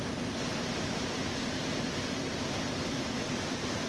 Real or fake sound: real